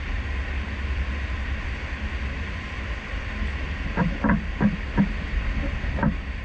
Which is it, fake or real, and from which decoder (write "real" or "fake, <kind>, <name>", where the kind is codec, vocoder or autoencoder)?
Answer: real